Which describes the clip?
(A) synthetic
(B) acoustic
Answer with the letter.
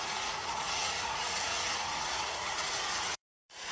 A